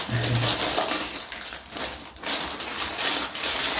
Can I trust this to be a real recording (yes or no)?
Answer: yes